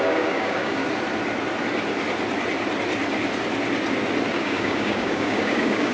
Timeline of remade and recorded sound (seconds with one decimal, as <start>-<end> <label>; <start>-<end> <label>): 0.0-0.8 remade; 0.8-4.3 recorded; 4.3-5.9 remade